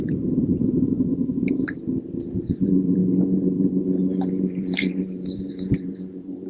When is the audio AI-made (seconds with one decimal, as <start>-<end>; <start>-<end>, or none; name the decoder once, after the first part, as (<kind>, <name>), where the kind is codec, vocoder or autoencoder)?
0.0-1.1 (vocoder, BigVGAN v2); 2.6-6.5